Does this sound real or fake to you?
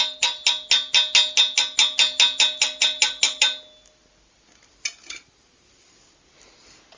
real